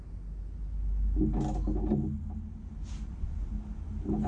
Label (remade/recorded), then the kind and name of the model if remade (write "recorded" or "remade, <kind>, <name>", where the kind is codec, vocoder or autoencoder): recorded